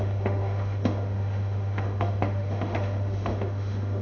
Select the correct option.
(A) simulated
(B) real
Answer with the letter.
A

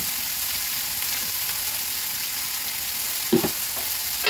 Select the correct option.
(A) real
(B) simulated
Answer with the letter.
A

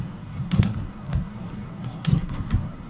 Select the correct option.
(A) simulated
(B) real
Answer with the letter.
A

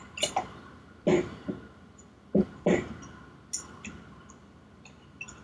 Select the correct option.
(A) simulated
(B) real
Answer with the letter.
B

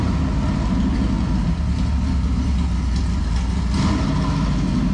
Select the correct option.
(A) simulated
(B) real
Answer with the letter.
B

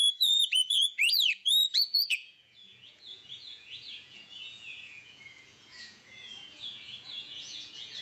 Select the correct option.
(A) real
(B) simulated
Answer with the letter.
B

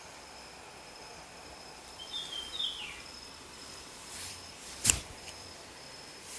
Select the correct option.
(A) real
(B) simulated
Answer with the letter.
B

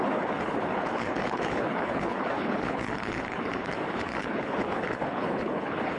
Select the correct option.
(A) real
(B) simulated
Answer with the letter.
B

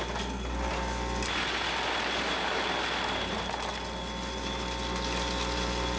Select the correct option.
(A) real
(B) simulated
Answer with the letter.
A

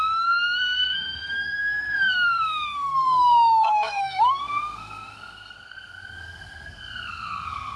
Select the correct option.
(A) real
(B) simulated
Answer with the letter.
B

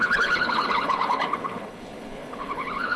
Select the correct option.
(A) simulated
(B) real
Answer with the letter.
A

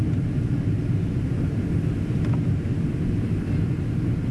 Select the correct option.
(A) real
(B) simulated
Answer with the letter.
A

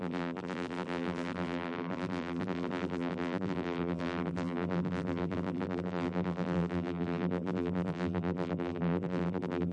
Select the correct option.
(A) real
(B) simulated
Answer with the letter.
B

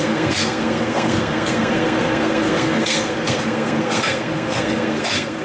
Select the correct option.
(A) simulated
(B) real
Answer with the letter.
A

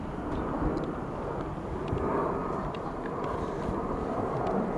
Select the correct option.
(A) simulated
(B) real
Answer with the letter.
A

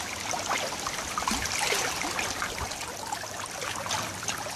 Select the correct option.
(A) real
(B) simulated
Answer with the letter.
A